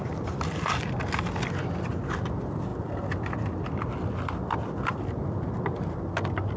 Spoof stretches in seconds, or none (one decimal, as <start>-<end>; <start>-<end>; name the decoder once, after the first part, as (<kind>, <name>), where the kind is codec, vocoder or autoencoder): none